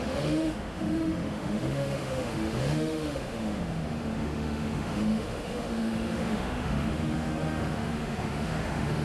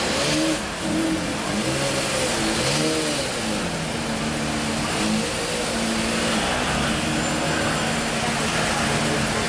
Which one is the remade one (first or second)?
first